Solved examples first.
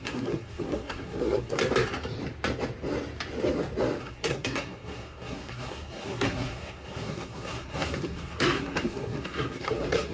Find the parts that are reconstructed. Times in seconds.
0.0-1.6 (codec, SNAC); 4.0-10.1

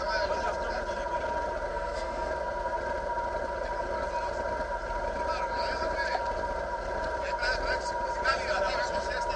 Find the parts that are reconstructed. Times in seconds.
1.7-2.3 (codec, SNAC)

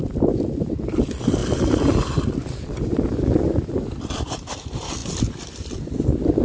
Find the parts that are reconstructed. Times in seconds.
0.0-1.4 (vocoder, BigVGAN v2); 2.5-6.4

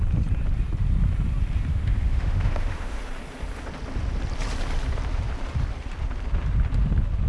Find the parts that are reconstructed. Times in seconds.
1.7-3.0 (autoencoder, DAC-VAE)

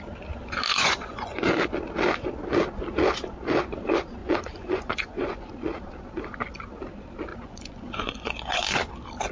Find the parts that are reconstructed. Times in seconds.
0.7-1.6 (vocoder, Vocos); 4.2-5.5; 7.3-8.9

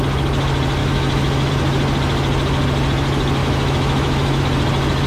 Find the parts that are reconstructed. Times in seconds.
0.8-1.5 (autoencoder, DAC-VAE); 3.4-4.4